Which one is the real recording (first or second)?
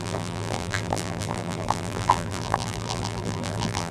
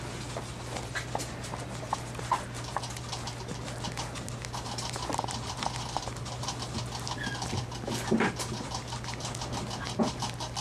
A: second